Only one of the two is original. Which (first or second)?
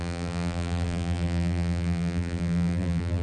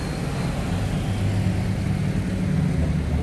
second